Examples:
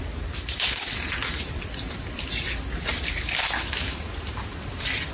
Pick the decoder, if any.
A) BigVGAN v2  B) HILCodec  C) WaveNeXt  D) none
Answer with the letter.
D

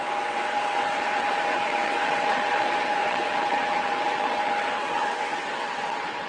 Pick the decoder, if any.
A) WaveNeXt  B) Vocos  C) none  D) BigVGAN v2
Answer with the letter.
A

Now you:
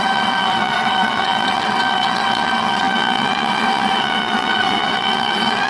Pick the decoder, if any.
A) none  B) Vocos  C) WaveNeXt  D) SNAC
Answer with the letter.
C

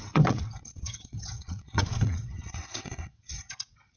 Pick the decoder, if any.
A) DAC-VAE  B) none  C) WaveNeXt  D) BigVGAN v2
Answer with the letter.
C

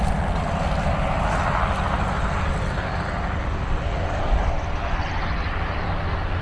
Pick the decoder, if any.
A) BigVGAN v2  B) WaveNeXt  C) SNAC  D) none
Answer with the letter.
D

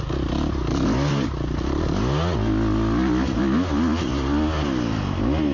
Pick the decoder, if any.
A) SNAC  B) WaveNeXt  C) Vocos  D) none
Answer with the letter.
D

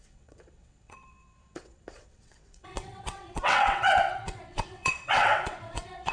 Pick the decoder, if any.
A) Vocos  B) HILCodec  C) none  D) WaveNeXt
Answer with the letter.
D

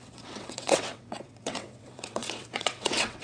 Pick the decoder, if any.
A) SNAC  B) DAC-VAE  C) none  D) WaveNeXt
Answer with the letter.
D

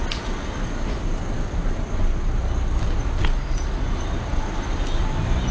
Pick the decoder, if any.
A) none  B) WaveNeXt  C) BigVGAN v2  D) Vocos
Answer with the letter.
A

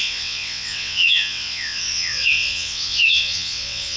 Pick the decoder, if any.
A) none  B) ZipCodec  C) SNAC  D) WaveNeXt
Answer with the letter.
D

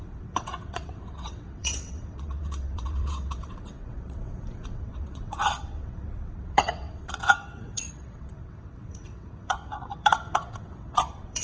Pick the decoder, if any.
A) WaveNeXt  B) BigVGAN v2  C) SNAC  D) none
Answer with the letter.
A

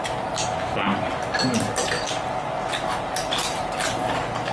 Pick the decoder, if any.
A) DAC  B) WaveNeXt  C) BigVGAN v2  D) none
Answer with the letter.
D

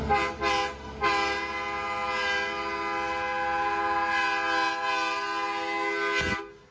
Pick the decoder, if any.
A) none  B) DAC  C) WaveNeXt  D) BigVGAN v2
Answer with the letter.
A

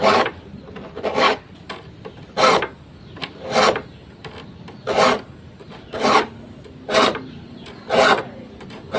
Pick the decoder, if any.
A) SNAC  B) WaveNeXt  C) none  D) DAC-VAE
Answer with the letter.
C